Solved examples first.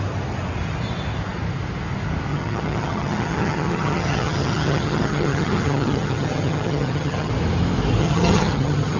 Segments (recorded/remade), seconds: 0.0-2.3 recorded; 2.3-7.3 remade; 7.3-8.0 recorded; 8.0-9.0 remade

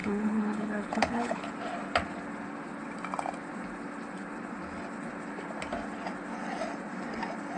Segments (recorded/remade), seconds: 0.0-1.5 remade; 1.5-7.6 recorded

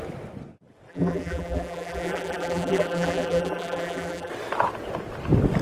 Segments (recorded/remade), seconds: 0.0-0.9 recorded; 0.9-4.3 remade; 4.3-5.6 recorded

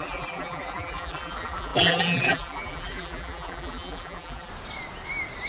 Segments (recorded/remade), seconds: 0.0-4.5 remade; 4.5-5.5 recorded

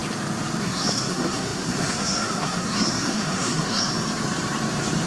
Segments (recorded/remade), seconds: 0.0-0.6 recorded; 0.6-3.9 remade; 3.9-5.1 recorded